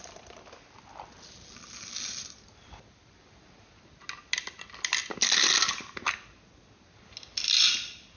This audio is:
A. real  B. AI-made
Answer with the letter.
A